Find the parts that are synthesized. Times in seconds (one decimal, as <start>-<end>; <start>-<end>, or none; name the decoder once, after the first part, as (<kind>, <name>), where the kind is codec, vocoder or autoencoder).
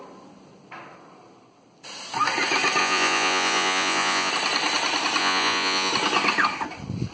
2.8-4.3 (vocoder, Vocos); 5.2-5.9